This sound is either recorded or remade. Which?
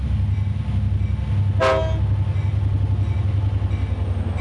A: recorded